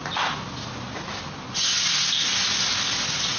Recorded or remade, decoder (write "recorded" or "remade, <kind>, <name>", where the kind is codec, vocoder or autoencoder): recorded